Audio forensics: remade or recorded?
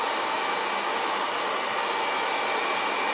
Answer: recorded